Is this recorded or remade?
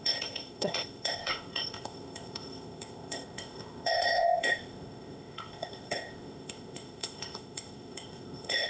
remade